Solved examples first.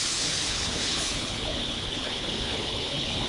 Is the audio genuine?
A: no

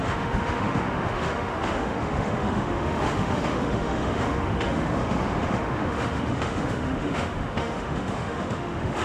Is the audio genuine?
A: no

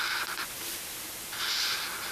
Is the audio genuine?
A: yes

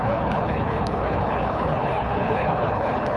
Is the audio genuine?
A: no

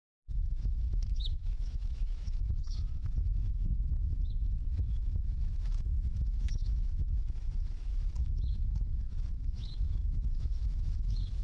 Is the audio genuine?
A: no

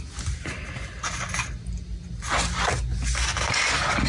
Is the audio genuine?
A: yes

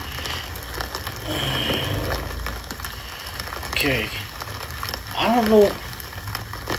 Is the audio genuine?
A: yes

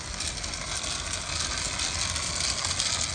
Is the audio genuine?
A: yes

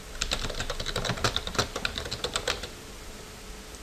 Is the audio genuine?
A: yes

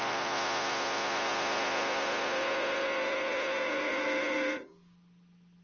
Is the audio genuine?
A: yes